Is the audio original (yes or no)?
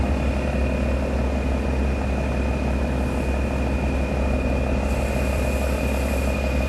yes